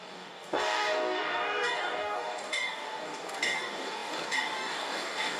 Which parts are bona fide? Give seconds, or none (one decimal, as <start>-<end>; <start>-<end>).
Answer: none